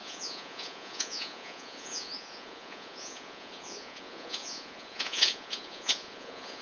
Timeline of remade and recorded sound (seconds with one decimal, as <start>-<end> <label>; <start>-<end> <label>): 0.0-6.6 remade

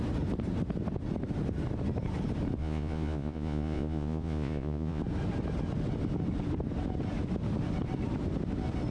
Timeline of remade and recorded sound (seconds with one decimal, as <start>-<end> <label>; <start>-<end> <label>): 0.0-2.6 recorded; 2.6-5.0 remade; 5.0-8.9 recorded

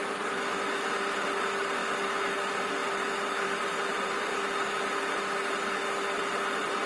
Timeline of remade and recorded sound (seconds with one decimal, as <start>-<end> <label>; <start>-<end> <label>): 0.0-1.8 recorded; 1.8-2.3 remade; 2.3-2.8 recorded; 2.8-4.3 remade; 4.3-6.9 recorded